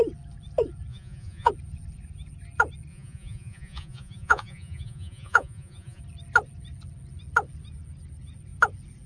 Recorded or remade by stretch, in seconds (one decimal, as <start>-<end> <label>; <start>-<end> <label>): 0.0-0.9 recorded; 0.9-1.5 remade; 1.5-2.9 recorded; 2.9-6.0 remade; 6.0-9.1 recorded